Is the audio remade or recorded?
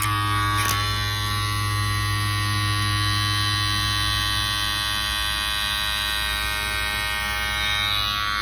recorded